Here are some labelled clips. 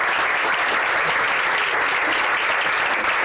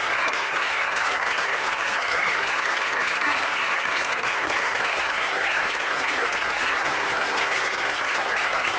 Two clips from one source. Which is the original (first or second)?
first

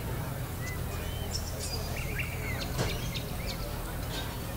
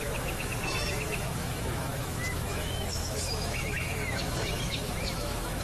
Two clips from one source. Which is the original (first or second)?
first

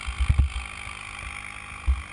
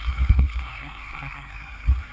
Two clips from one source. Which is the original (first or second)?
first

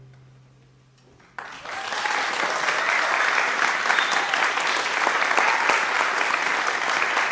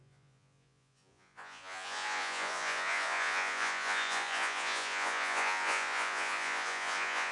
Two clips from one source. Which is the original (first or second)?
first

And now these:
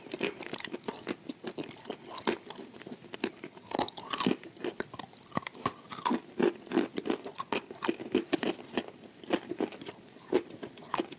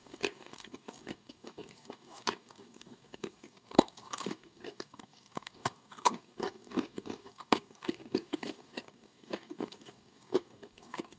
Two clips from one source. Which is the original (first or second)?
first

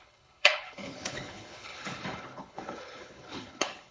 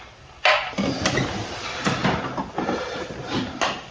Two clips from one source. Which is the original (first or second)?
second